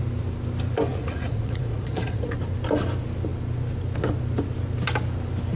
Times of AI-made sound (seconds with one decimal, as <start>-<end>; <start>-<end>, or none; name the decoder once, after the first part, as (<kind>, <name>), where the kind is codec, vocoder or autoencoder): 0.9-2.4 (vocoder, Vocos)